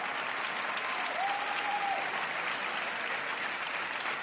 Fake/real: fake